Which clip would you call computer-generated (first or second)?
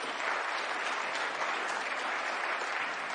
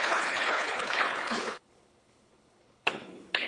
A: second